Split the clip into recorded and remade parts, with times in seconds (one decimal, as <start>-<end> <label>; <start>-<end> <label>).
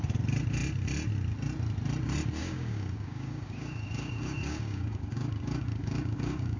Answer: 0.0-2.4 recorded; 2.4-6.6 remade